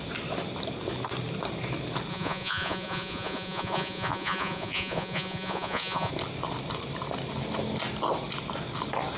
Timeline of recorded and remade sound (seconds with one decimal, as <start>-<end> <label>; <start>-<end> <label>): 0.0-2.1 recorded; 2.1-6.1 remade; 6.1-9.2 recorded